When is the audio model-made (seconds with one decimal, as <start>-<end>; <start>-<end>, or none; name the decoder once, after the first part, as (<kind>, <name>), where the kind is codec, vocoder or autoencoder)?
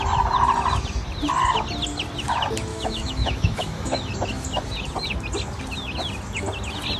2.7-4.1 (autoencoder, DAC-VAE)